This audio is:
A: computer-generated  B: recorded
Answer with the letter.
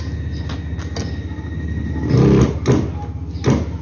B